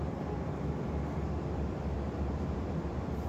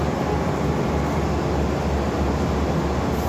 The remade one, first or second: first